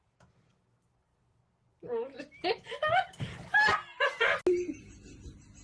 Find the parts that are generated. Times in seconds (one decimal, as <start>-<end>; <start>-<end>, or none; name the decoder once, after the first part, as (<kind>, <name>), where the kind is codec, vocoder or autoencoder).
none